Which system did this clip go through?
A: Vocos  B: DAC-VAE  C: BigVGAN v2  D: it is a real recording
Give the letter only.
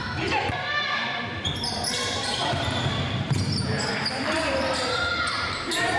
C